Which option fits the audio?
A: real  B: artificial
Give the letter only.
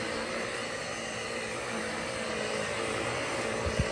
A